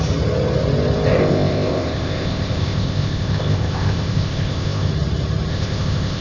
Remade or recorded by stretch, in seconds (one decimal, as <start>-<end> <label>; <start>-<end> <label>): 0.0-1.2 recorded; 1.2-4.9 remade; 4.9-5.5 recorded; 5.5-6.2 remade